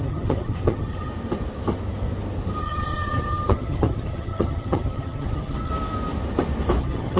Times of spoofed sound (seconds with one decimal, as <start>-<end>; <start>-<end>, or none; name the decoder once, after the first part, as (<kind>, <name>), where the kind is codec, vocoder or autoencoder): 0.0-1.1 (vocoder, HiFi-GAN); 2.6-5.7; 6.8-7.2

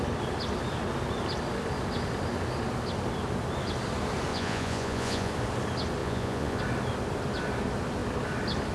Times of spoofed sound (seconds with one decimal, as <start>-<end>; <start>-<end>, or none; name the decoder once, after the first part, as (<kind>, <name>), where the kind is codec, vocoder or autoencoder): 4.3-5.3 (vocoder, Vocos); 6.0-6.6

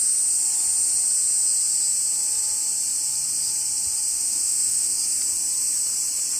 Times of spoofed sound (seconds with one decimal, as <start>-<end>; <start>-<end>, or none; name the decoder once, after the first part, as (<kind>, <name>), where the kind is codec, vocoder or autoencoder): 4.1-5.0 (autoencoder, DAC-VAE)